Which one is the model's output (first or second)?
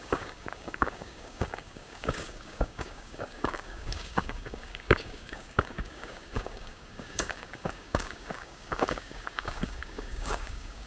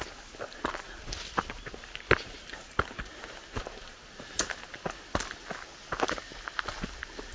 first